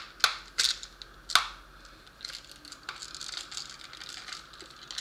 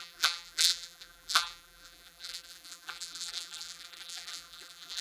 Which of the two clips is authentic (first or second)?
first